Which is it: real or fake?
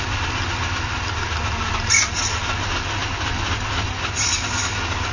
real